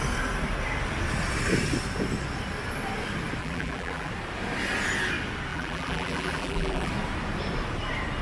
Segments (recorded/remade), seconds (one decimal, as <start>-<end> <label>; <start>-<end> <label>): 0.0-3.4 recorded; 3.4-4.1 remade; 4.1-5.5 recorded; 5.5-6.9 remade; 6.9-8.2 recorded